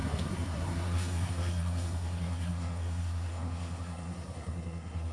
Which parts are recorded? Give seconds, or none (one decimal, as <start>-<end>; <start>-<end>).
none